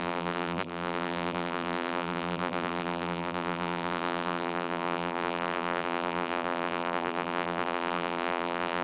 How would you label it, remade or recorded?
remade